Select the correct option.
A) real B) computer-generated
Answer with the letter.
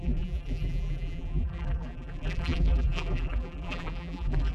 B